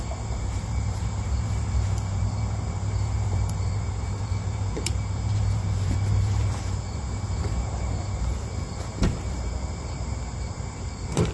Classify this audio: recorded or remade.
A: remade